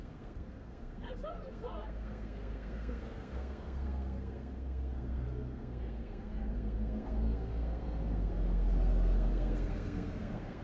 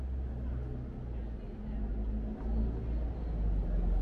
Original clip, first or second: second